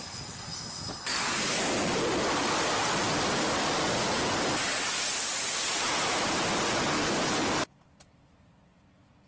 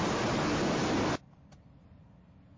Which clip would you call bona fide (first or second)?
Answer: first